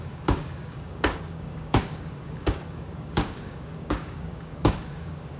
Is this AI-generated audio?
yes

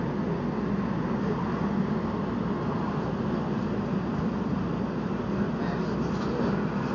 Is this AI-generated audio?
no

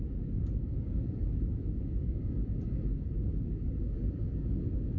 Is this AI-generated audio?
yes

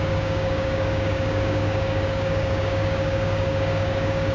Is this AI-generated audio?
yes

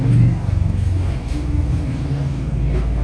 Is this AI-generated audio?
yes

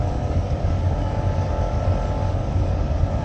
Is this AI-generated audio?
yes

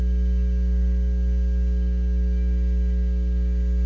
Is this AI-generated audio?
yes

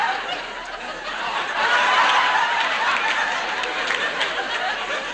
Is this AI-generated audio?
no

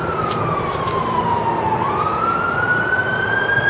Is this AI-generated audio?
no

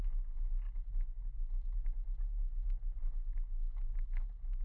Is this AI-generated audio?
no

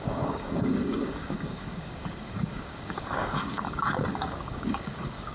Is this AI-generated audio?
yes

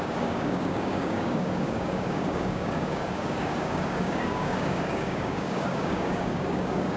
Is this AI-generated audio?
yes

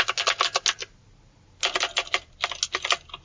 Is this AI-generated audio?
no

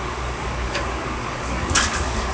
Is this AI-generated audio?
yes